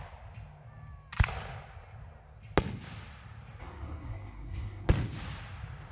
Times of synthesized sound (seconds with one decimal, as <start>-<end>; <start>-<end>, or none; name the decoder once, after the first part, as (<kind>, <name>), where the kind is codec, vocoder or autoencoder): 3.6-4.9 (codec, SNAC)